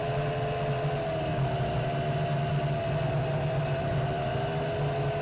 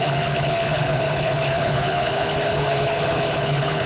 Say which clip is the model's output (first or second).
second